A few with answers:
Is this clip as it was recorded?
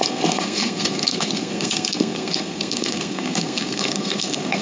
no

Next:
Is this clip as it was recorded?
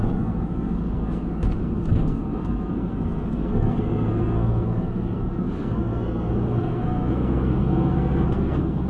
no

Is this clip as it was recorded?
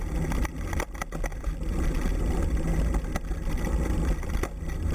yes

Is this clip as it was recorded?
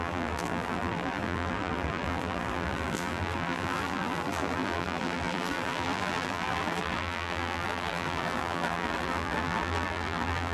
no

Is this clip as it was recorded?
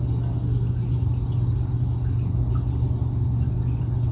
yes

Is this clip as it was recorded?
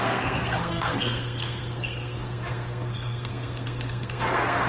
no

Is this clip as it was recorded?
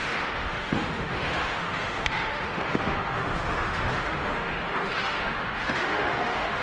no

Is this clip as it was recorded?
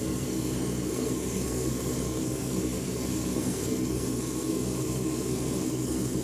no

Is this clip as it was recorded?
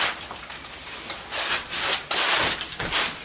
yes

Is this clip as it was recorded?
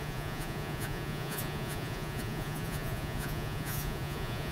no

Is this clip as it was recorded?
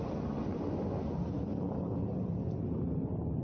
yes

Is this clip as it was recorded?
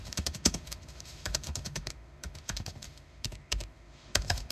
no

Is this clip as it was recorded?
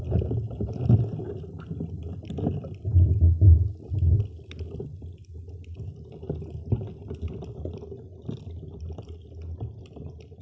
yes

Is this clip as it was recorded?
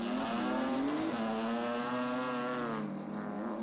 yes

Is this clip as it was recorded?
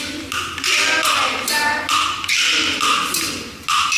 yes